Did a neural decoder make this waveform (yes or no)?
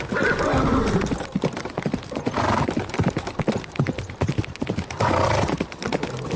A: no